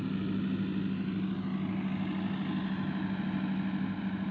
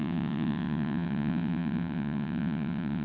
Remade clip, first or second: second